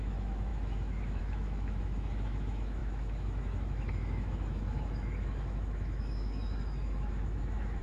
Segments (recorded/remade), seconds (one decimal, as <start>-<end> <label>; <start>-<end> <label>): 0.0-7.8 remade